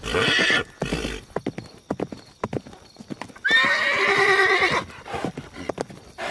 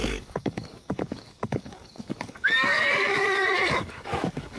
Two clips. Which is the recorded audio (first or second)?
first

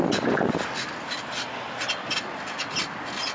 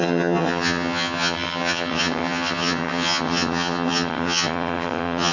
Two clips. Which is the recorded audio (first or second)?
first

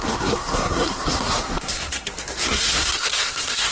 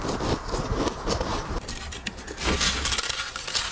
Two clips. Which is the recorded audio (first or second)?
second